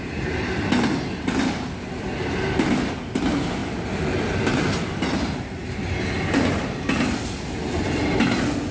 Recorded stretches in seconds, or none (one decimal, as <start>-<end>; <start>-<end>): 0.0-8.7